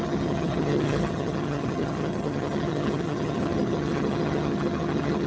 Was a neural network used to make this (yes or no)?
yes